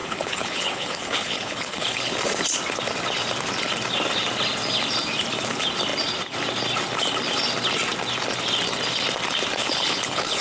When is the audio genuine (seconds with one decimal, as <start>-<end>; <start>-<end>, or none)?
2.1-9.6